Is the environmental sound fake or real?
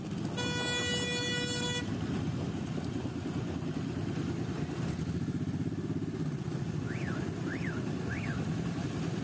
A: real